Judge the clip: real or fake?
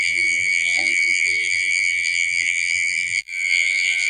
fake